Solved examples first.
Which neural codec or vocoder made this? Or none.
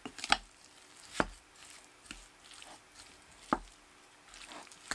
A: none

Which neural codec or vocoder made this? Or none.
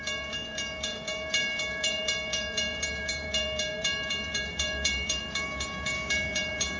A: vocoder, BigVGAN v2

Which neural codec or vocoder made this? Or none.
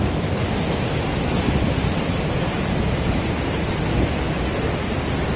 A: none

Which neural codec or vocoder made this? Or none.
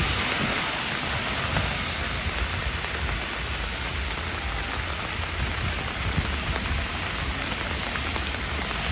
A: none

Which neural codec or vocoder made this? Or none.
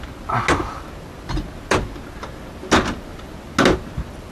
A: none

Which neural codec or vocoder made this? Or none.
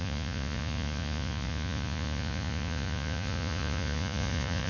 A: vocoder, Vocos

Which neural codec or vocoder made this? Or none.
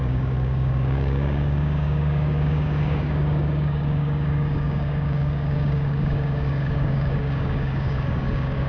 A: codec, DAC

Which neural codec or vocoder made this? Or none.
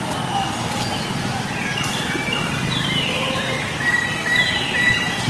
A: none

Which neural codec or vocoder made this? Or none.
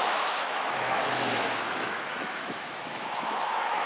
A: autoencoder, DAC-VAE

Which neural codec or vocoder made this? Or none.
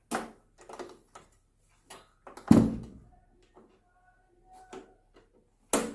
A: none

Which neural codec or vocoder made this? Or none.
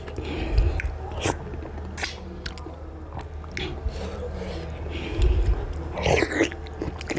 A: none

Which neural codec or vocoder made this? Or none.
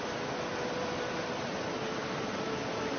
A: none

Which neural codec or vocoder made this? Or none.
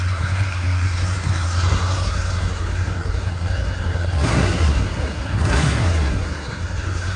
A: codec, SNAC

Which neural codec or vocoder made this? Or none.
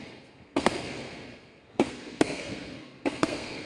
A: codec, SNAC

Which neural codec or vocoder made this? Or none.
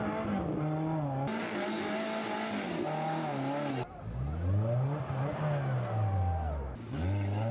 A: none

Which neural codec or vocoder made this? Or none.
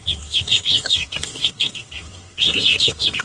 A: codec, SNAC